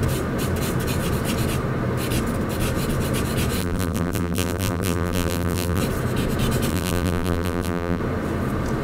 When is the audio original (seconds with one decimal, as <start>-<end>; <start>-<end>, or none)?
0.0-3.6; 5.8-6.7; 8.0-8.8

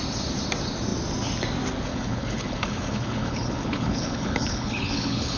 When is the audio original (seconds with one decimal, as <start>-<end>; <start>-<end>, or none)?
0.0-1.9

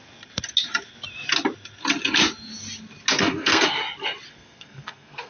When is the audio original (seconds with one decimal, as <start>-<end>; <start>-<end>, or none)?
0.0-3.2; 3.8-4.3